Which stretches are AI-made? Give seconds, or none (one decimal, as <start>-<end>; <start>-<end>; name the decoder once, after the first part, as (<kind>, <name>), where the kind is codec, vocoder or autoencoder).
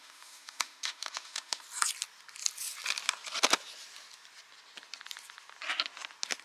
0.0-1.6 (autoencoder, DAC-VAE)